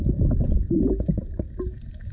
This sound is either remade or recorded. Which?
recorded